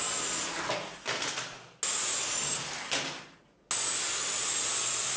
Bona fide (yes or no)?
yes